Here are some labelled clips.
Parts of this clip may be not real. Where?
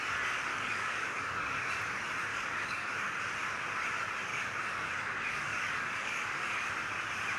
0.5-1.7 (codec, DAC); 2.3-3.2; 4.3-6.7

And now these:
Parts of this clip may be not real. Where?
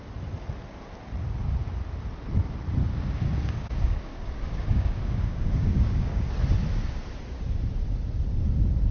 2.8-6.3 (codec, DAC)